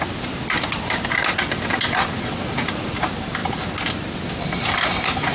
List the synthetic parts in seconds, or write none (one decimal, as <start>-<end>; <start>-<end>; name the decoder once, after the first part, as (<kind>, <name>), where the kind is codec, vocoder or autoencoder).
none